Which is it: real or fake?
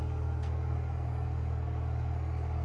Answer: fake